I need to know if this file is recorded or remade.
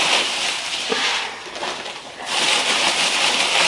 remade